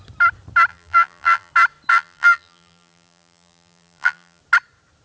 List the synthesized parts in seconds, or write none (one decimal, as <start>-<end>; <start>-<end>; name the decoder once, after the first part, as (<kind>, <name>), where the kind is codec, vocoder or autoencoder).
0.7-1.5 (vocoder, BigVGAN v2); 1.9-4.4